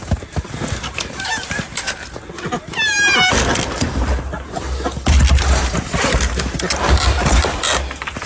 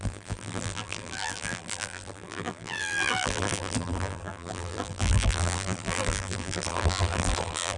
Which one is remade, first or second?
second